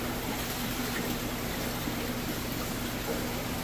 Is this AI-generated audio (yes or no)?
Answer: no